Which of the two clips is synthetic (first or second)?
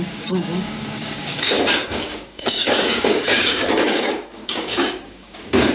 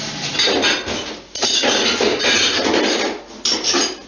first